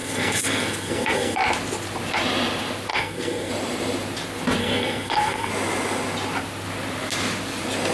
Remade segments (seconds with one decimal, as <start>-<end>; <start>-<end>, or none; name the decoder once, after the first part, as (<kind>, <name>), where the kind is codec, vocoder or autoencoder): 0.0-1.4 (codec, SNAC); 2.9-3.5; 4.6-5.5